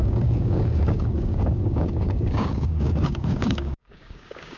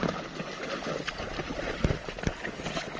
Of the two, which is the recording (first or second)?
second